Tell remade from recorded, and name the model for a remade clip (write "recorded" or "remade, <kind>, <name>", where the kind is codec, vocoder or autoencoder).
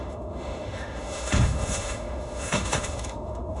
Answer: remade, autoencoder, DAC-VAE